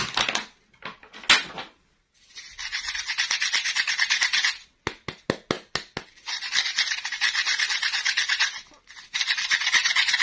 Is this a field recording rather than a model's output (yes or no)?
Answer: yes